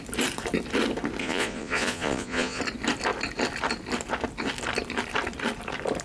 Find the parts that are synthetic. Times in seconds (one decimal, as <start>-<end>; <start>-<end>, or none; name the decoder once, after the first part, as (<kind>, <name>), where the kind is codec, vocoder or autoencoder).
1.2-2.6 (vocoder, Vocos)